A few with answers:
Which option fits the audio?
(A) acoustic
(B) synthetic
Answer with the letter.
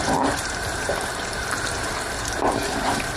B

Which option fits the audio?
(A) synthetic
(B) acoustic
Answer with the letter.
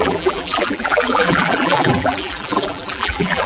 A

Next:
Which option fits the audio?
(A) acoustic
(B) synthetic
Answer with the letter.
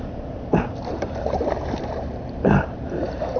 B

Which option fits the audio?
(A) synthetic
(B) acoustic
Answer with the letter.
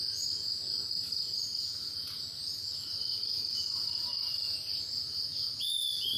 B